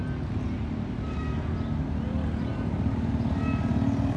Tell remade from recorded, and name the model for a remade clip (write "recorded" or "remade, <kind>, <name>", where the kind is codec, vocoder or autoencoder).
recorded